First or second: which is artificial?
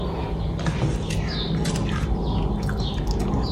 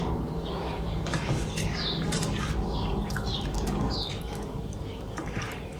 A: second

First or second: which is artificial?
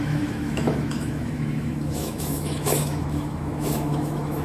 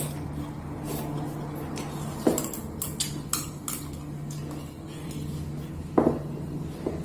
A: first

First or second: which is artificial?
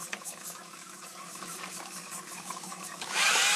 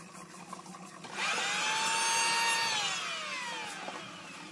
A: first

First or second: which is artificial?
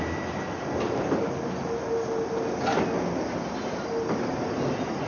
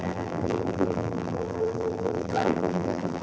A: second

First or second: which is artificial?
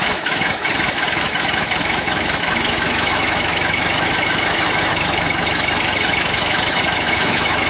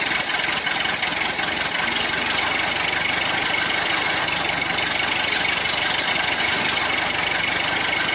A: first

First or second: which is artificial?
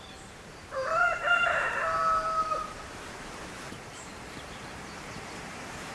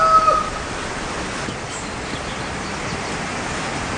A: first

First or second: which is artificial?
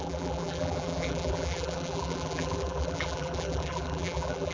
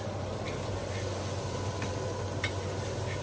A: first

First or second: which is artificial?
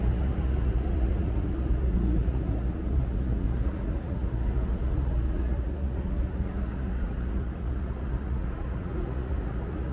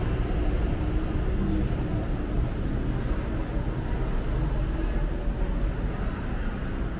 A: first